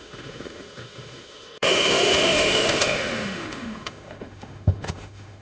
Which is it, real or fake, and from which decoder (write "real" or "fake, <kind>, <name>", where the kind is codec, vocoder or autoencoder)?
fake, autoencoder, DAC-VAE